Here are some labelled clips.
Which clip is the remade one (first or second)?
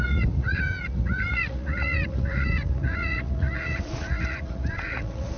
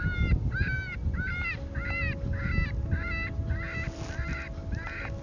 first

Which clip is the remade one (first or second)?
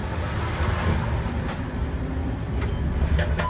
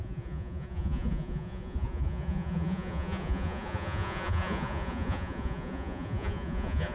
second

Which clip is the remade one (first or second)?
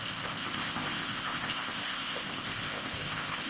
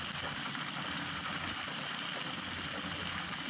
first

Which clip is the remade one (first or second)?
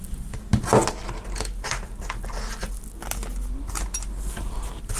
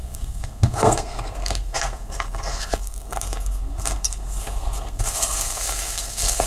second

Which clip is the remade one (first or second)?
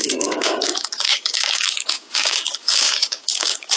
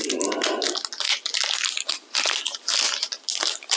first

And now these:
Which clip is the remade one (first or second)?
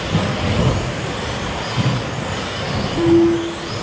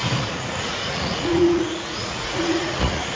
second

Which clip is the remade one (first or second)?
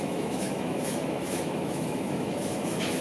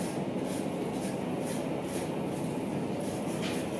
first